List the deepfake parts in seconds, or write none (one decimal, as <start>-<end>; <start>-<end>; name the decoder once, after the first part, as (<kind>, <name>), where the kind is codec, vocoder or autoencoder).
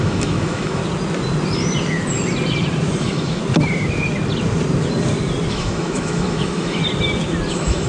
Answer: 0.0-0.8 (autoencoder, DAC-VAE); 3.0-3.4; 5.5-6.8; 7.5-7.9